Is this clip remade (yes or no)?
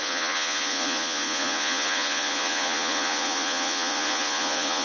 yes